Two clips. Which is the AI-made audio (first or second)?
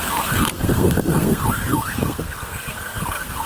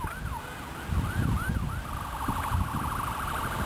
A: first